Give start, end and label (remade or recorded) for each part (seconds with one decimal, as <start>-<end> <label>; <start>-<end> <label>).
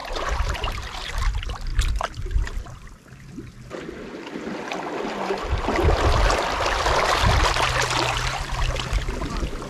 0.0-1.2 remade; 1.2-9.7 recorded